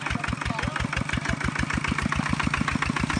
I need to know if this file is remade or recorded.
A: recorded